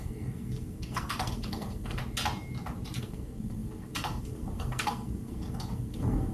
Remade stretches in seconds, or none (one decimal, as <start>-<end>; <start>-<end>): 0.0-2.0; 3.0-6.3